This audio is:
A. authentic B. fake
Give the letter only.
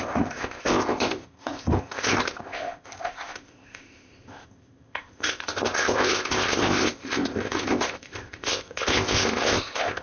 B